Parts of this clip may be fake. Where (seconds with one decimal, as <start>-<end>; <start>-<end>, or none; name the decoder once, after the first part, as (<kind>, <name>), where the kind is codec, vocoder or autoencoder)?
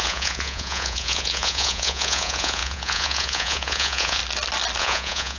0.0-4.2 (vocoder, Vocos); 4.8-5.4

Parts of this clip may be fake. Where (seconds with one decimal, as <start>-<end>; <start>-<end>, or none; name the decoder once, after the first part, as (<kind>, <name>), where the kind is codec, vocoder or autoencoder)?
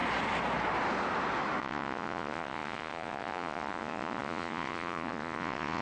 1.6-5.8 (vocoder, Vocos)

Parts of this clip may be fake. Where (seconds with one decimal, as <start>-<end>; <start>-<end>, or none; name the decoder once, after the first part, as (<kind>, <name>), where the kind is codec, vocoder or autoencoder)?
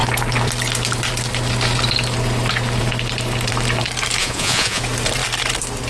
4.2-4.8 (vocoder, Vocos)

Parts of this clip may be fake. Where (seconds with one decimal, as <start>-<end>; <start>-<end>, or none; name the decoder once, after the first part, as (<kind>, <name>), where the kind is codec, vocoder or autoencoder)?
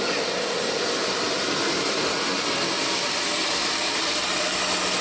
none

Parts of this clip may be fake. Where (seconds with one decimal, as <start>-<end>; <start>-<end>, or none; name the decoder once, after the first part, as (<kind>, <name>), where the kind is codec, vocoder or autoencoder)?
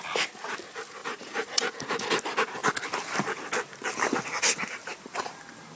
1.0-2.1 (vocoder, Vocos)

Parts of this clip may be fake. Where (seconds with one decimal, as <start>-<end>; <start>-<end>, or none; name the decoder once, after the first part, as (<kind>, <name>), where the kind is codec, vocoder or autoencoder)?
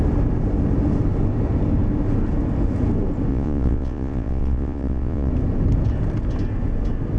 3.3-5.3 (vocoder, Vocos)